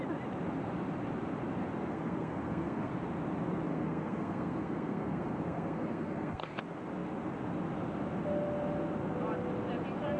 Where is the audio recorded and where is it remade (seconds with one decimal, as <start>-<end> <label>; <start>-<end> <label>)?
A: 0.0-1.9 recorded; 1.9-2.9 remade; 2.9-3.7 recorded; 3.7-6.6 remade; 6.6-10.2 recorded